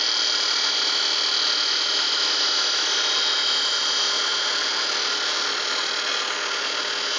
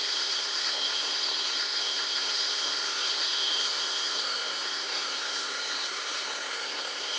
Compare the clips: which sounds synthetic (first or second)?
second